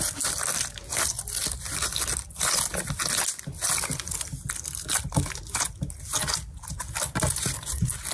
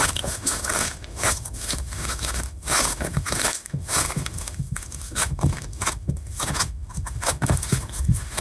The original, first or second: first